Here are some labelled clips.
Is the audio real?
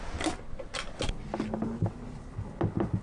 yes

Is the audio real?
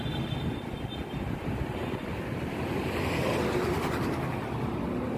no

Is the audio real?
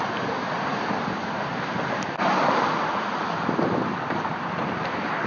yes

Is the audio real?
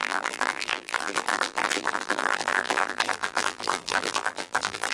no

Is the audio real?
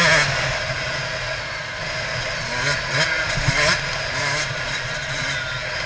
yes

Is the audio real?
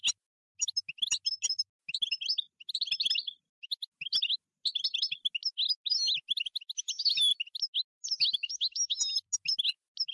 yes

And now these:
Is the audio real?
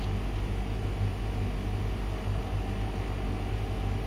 yes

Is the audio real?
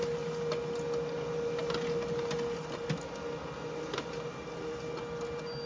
yes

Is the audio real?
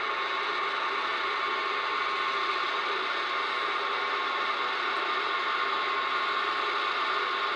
yes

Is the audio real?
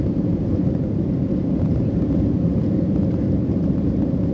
no